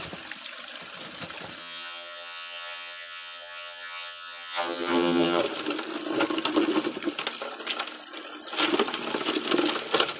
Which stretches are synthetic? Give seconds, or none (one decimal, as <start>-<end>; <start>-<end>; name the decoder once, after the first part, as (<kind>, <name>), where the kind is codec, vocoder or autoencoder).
1.6-5.4 (vocoder, HiFi-GAN)